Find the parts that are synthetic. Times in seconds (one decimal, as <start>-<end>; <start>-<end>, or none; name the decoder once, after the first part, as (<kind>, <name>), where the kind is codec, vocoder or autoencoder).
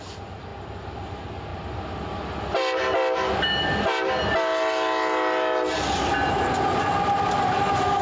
none